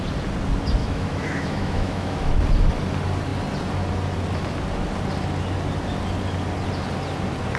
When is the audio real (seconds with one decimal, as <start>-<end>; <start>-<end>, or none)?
0.0-0.8; 2.4-7.6